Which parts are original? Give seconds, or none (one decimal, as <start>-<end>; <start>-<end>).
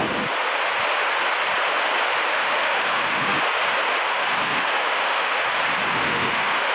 0.0-2.3; 3.4-4.1; 5.4-5.9